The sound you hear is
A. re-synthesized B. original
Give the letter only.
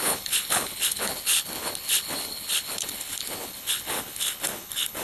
A